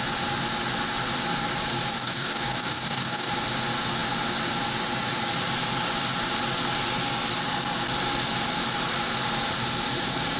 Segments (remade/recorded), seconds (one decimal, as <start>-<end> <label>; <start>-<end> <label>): 0.0-1.9 recorded; 1.9-3.3 remade; 3.3-10.4 recorded